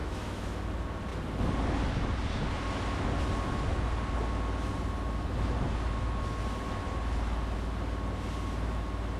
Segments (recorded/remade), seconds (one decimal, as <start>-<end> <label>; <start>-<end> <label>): 0.0-0.6 remade; 0.6-9.2 recorded